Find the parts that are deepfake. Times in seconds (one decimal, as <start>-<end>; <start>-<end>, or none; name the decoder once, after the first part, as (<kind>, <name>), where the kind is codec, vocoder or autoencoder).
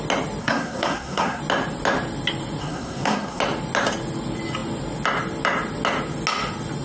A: 0.4-1.4 (codec, SNAC); 2.6-3.4